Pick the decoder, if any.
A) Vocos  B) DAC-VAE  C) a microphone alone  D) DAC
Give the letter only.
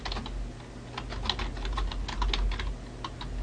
C